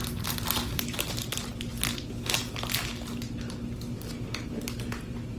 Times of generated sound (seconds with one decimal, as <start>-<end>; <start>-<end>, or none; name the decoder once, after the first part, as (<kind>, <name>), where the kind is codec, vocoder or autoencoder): none